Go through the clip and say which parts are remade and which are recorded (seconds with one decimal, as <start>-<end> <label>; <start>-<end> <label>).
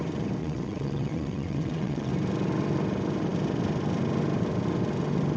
0.0-0.4 recorded; 0.4-2.1 remade; 2.1-5.4 recorded